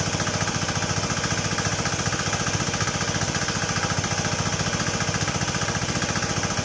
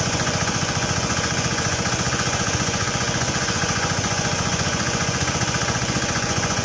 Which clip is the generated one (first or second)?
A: second